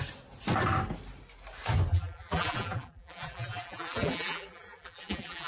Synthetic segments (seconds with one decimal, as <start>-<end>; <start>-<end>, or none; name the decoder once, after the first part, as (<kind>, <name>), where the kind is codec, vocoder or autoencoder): 1.9-5.5 (vocoder, BigVGAN v2)